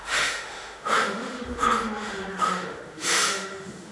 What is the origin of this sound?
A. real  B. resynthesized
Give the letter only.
B